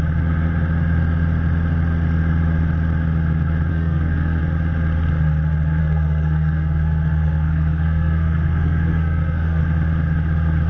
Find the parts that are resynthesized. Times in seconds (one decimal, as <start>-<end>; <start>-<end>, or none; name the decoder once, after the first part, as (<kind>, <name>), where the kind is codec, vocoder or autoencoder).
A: 3.7-4.4 (codec, SNAC); 5.8-9.6